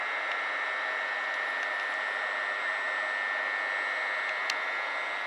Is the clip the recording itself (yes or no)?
yes